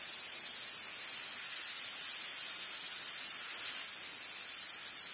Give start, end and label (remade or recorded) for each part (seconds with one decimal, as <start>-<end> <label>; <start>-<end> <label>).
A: 0.0-5.1 recorded